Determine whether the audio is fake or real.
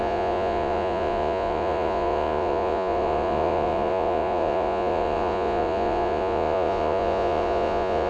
fake